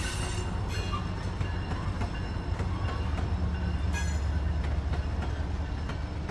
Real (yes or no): yes